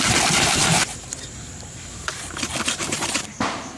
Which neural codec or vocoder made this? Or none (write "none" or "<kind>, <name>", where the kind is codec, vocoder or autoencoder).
vocoder, BigVGAN v2